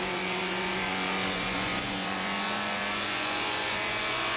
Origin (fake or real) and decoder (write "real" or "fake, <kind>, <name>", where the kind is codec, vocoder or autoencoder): fake, vocoder, Vocos